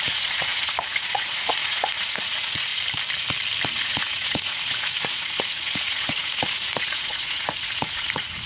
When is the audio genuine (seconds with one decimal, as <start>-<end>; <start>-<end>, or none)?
2.7-3.7